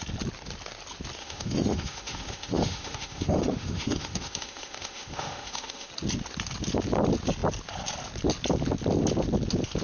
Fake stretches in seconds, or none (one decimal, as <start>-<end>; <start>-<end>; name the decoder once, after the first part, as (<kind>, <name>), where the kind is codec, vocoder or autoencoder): 1.2-5.9 (autoencoder, DAC-VAE)